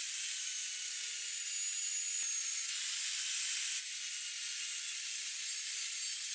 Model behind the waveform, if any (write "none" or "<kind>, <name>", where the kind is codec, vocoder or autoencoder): none